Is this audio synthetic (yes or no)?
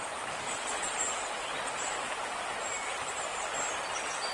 no